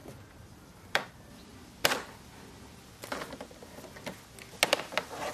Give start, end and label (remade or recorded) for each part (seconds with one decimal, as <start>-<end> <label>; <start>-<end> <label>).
0.0-1.5 remade; 1.5-4.7 recorded; 4.7-5.3 remade